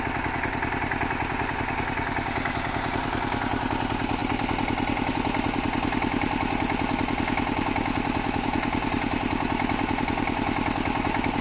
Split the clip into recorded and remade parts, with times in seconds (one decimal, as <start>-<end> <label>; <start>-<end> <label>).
0.0-11.4 recorded